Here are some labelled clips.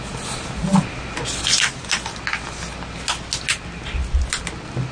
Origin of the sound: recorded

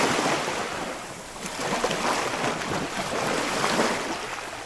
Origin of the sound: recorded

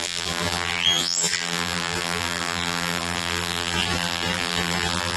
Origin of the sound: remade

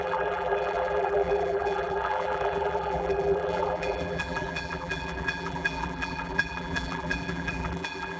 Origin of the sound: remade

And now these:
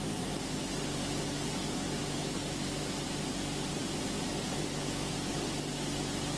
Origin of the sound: recorded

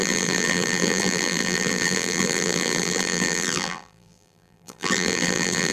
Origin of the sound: remade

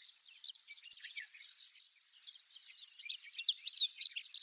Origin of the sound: recorded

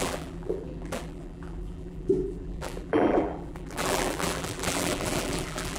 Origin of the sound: remade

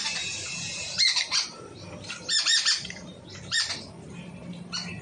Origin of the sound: remade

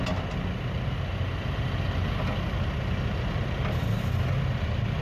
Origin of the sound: recorded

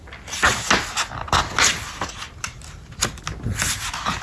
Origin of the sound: recorded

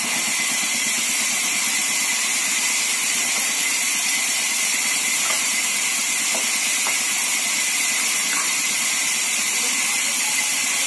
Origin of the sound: remade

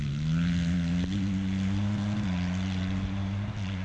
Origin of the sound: recorded